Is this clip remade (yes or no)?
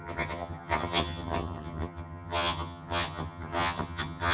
yes